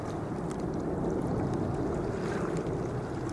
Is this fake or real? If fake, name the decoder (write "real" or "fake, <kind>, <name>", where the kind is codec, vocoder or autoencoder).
fake, vocoder, BigVGAN v2